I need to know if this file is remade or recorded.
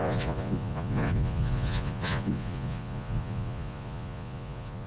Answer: remade